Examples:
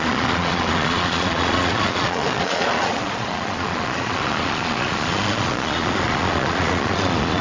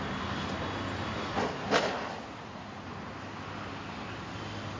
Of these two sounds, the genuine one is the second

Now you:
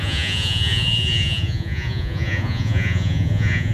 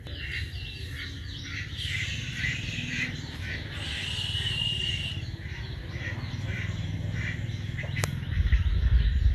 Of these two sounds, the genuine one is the second